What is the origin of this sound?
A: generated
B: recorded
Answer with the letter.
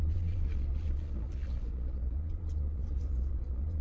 A